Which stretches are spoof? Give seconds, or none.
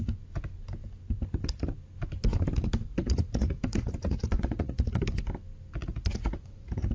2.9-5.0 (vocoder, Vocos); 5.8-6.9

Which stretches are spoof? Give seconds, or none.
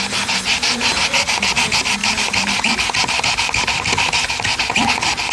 2.0-5.3 (vocoder, BigVGAN v2)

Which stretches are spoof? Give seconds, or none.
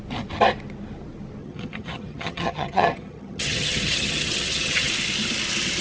1.4-4.9 (vocoder, HiFi-GAN)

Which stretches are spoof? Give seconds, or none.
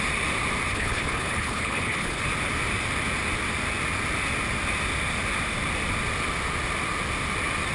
0.7-2.2 (codec, HILCodec)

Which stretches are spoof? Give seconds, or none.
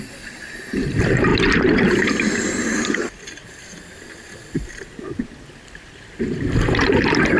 none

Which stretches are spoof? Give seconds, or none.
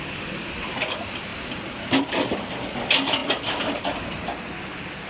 none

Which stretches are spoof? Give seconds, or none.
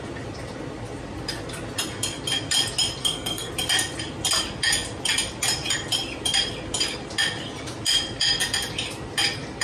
3.0-3.5 (codec, SNAC)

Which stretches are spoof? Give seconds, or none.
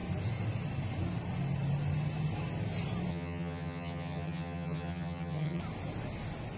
3.1-5.6 (vocoder, HiFi-GAN)